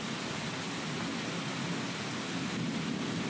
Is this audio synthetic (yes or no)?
no